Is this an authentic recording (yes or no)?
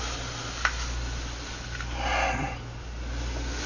yes